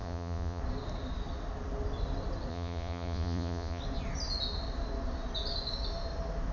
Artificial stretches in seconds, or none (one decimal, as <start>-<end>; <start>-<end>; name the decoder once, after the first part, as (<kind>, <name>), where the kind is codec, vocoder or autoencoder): 0.0-0.6 (vocoder, Vocos); 2.5-3.8

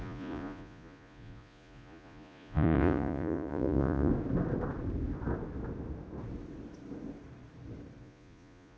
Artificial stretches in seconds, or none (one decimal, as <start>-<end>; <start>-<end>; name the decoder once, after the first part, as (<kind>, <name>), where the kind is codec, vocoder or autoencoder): 0.0-4.1 (vocoder, Vocos); 8.0-8.8

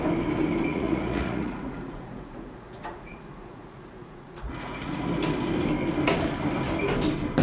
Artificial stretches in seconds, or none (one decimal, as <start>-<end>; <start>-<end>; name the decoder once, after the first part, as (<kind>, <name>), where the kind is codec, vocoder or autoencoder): 0.7-5.1 (vocoder, Vocos)

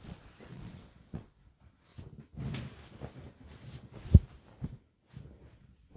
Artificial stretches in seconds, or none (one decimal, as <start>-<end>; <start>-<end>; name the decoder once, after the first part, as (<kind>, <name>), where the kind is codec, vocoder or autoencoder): 0.0-1.9 (vocoder, Vocos); 5.5-6.0

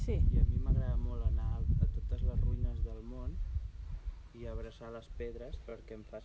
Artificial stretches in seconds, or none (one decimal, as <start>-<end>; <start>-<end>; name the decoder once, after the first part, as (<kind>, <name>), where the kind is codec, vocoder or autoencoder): none